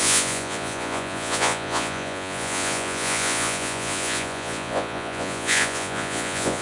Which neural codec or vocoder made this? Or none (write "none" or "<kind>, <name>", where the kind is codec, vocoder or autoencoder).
vocoder, Vocos